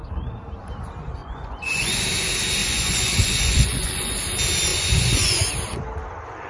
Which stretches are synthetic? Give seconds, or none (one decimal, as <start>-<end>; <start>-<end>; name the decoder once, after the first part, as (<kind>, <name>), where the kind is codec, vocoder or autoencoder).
1.2-2.0 (vocoder, Vocos); 2.6-4.2; 4.7-5.5